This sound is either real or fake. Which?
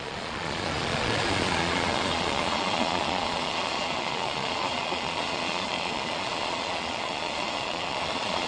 fake